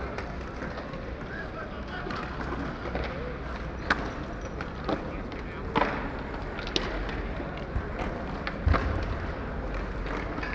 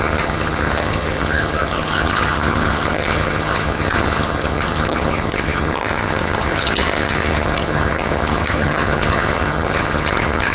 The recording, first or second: first